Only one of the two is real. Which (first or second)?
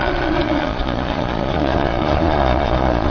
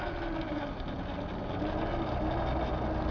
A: second